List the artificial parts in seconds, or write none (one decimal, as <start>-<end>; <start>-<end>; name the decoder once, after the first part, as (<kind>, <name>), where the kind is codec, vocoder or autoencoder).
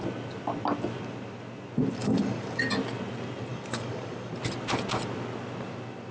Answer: 2.0-2.6 (codec, DAC); 3.5-4.3